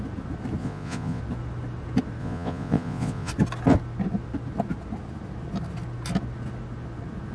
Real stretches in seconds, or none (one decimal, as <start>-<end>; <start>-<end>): 0.0-0.6; 1.2-2.2; 3.3-7.3